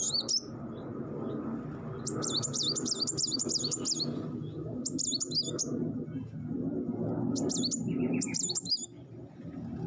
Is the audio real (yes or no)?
yes